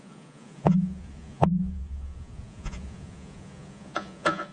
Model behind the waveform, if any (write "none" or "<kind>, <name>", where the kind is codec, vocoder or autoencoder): vocoder, Vocos